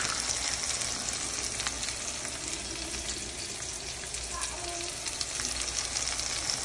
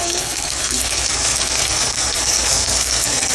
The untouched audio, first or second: first